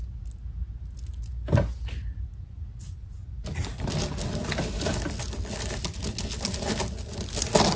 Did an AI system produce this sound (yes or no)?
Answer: no